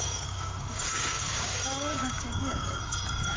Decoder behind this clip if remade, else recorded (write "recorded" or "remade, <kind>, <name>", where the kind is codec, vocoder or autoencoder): remade, codec, DAC